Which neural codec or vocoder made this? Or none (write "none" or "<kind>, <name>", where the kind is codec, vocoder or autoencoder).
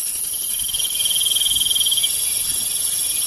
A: none